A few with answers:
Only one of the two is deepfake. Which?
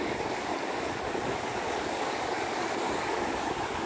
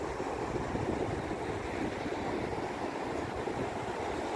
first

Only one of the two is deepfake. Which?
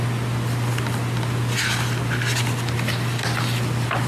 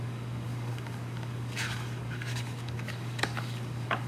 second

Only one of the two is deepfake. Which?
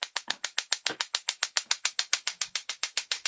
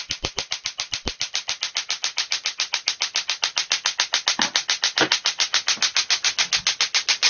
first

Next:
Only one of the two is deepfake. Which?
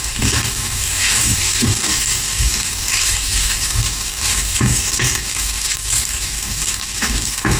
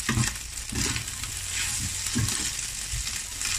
first